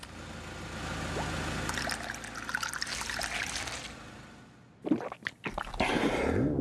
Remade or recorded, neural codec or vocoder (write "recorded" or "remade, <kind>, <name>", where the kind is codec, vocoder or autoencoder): recorded